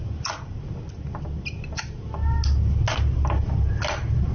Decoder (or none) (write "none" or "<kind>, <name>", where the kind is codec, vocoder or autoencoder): none